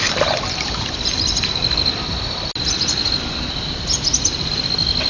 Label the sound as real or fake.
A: real